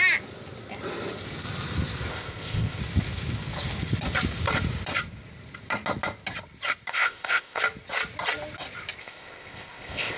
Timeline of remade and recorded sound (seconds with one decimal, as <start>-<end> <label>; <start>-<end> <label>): 0.0-2.1 recorded; 2.1-2.8 remade; 2.8-6.9 recorded; 6.9-7.6 remade; 7.6-9.0 recorded; 9.0-10.2 remade